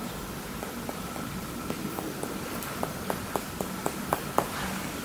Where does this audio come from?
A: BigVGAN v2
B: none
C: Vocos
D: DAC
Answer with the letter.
A